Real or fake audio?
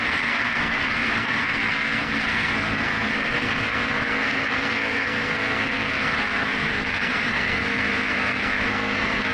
fake